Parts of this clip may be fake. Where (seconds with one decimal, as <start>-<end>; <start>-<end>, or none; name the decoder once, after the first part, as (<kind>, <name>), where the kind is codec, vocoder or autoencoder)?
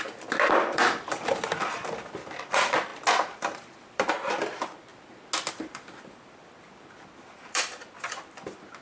0.0-4.9 (vocoder, BigVGAN v2); 5.5-8.8